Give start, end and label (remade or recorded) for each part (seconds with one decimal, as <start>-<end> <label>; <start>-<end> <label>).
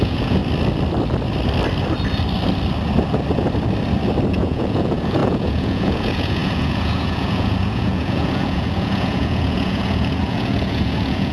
0.0-0.4 remade; 0.4-4.3 recorded; 4.3-11.3 remade